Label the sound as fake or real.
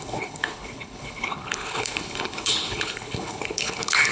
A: fake